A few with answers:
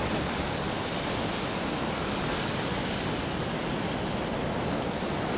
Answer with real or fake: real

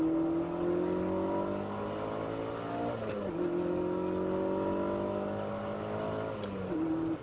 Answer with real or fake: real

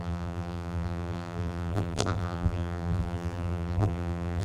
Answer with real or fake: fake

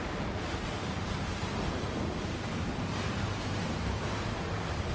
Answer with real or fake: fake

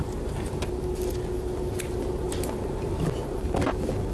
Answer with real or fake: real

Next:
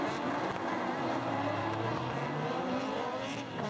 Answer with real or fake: real